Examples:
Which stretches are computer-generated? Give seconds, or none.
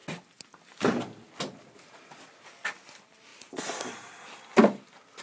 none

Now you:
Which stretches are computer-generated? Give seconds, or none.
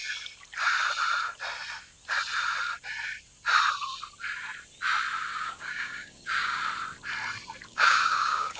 5.3-6.6 (codec, DAC); 7.7-8.6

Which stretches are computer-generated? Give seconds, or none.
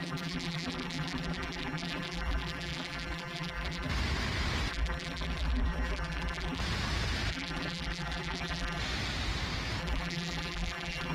0.0-3.9 (vocoder, BigVGAN v2); 4.7-6.6; 7.3-8.8; 9.8-11.1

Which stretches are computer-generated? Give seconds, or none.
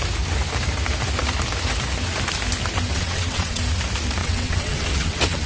2.9-3.6 (vocoder, WaveNeXt); 4.2-5.5